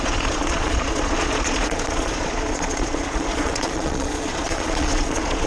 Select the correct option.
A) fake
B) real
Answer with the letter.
A